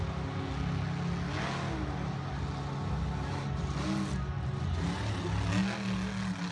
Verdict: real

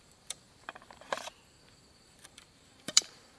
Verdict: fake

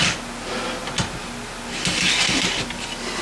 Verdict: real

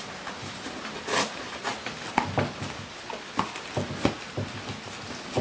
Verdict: real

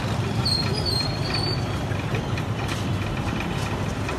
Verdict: fake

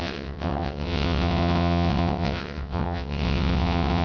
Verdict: fake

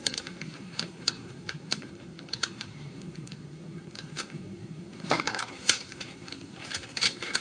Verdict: fake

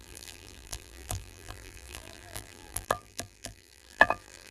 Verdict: fake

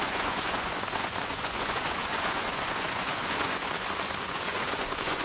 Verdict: fake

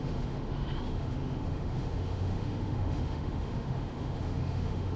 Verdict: fake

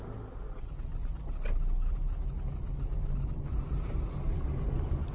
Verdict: real